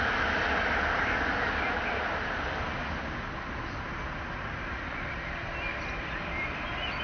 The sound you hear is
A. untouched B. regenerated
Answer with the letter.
A